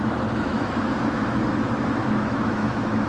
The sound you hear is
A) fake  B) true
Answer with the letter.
A